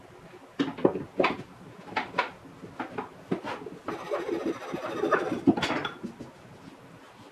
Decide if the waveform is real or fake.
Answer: real